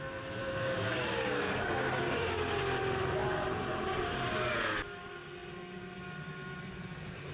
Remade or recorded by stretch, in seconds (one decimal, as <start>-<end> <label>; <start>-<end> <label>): 0.0-0.4 recorded; 0.4-2.6 remade; 2.6-7.3 recorded